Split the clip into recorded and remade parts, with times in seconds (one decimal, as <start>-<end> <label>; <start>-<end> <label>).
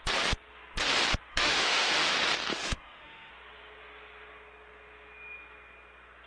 0.0-1.3 recorded; 1.3-1.9 remade; 1.9-2.5 recorded; 2.5-3.3 remade; 3.3-6.3 recorded